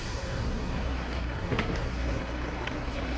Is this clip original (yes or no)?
no